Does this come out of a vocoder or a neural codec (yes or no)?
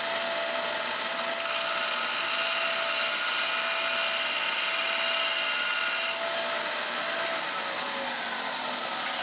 no